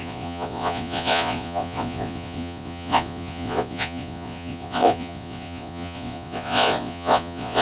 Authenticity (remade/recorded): remade